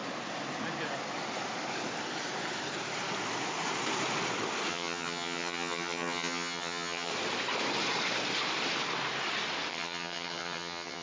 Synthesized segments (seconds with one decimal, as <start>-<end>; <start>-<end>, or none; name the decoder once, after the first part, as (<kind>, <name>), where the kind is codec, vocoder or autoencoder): 4.7-7.1 (vocoder, HiFi-GAN); 9.7-11.0